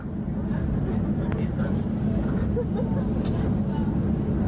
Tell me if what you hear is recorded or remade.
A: recorded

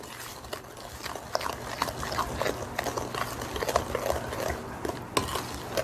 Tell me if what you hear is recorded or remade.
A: recorded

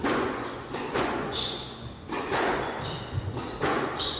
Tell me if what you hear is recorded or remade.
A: remade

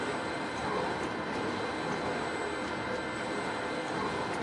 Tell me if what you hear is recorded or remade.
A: recorded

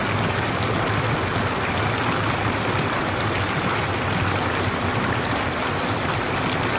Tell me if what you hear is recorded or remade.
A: recorded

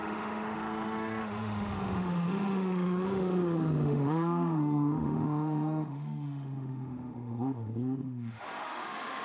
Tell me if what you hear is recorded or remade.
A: remade